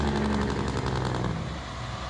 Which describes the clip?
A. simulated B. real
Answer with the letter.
B